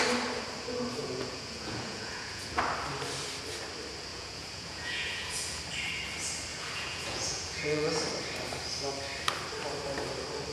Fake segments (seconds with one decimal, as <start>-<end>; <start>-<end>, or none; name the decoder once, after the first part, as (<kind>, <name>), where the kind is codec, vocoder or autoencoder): 1.0-2.6 (vocoder, Vocos); 4.1-5.6; 6.5-8.0

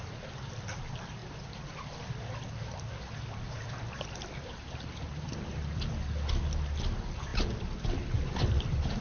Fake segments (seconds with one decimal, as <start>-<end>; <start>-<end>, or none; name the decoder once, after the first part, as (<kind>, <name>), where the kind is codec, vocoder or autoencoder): 1.2-6.0 (vocoder, BigVGAN v2); 7.3-9.0

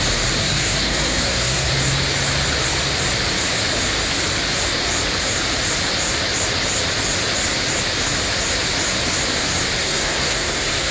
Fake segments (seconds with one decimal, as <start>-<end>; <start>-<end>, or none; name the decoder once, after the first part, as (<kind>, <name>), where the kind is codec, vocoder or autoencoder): 0.4-1.7 (codec, SNAC); 9.8-10.9

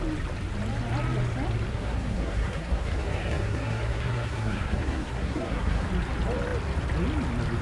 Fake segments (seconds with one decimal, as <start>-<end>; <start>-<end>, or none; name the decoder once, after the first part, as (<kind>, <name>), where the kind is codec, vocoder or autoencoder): 1.7-5.9 (codec, SNAC)